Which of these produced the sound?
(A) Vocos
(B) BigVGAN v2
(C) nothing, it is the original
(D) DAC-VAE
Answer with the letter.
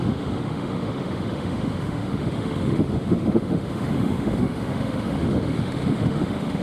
D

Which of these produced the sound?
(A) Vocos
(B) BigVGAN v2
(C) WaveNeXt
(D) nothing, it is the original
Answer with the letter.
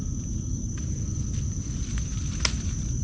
D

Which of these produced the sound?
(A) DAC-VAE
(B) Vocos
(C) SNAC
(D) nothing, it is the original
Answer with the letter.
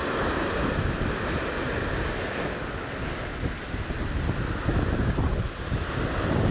D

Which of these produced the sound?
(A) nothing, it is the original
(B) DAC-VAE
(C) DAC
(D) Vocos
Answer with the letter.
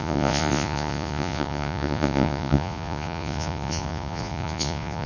D